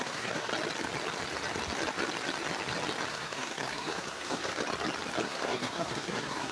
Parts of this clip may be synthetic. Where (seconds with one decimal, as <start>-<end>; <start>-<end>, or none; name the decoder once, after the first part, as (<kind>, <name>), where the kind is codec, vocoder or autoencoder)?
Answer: 0.0-0.5 (codec, SNAC); 3.1-4.6; 5.2-6.5